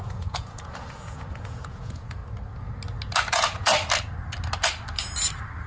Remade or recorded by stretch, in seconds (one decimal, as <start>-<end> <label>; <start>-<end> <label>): 0.0-2.2 remade; 2.2-3.3 recorded; 3.3-3.7 remade; 3.7-5.7 recorded